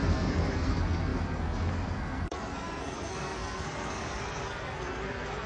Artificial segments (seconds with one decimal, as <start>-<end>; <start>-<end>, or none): 0.0-5.5